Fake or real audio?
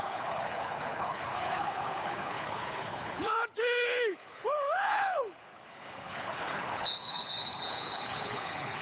fake